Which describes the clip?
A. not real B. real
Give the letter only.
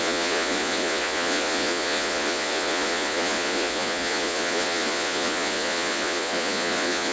A